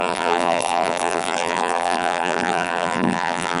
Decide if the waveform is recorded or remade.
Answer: remade